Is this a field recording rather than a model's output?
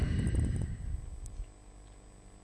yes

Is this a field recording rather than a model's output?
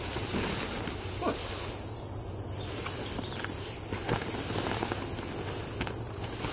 yes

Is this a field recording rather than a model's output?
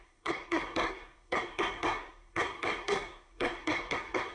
no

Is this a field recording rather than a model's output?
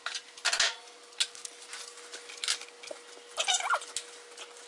yes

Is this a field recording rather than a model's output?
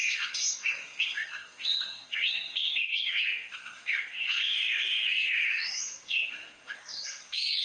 no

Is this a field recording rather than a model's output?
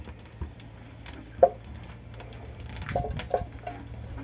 yes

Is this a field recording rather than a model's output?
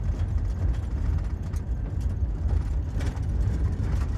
yes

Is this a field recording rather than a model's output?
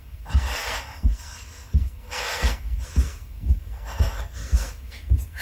no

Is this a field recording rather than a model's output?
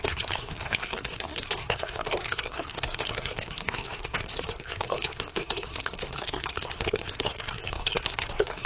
no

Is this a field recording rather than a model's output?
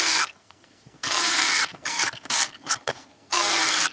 no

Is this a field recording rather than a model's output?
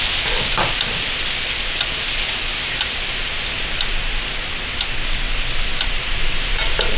yes